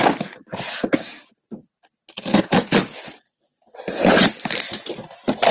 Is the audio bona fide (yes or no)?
yes